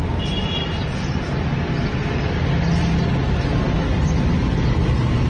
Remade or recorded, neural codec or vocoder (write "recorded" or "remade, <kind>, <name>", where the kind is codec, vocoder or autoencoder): recorded